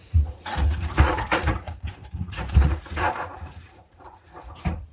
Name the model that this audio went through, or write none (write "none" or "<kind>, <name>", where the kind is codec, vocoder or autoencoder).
vocoder, Vocos